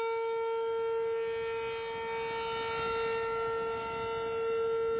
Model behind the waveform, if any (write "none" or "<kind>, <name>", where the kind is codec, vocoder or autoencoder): none